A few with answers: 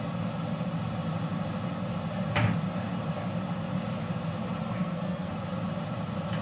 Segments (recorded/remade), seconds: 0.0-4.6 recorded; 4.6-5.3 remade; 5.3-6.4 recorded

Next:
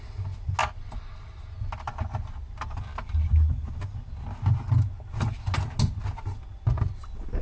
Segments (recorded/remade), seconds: 0.0-7.4 recorded

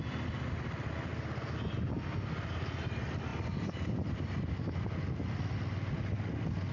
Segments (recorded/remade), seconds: 0.0-6.7 recorded